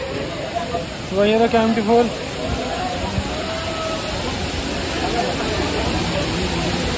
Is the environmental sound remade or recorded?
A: recorded